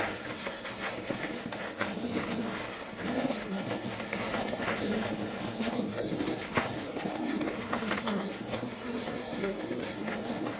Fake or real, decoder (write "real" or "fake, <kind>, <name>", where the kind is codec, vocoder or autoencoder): fake, codec, SNAC